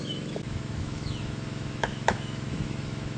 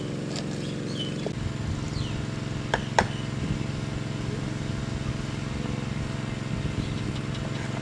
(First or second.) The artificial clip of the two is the first